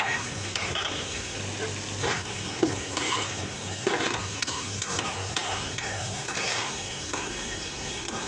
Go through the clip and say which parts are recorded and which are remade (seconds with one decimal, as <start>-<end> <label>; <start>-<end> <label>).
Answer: 0.0-1.4 remade; 1.4-2.0 recorded; 2.0-8.3 remade